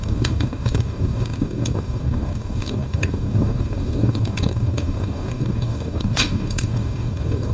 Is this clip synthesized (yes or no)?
yes